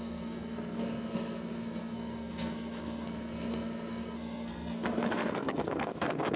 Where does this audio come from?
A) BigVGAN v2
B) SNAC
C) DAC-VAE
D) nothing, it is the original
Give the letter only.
B